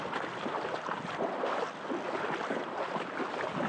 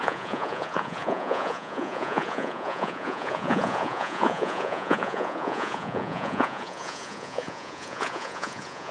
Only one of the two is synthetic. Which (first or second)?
second